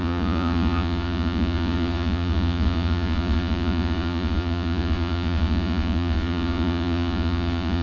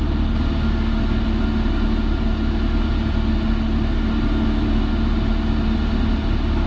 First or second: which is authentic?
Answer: second